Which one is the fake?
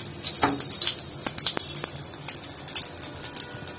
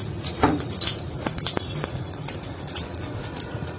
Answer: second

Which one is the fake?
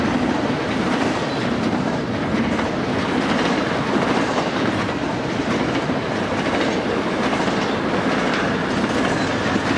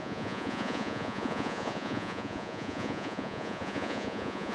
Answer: second